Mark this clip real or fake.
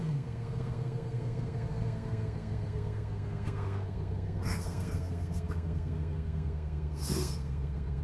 fake